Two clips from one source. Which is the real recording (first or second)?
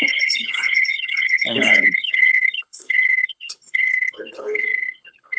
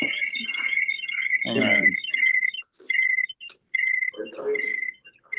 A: second